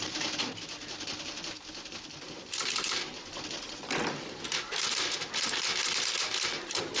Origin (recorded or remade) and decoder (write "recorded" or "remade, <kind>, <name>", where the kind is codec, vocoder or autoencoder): remade, vocoder, BigVGAN v2